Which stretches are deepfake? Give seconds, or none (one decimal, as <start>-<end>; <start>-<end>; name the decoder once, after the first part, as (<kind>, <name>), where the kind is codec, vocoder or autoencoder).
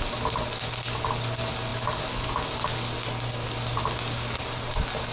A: none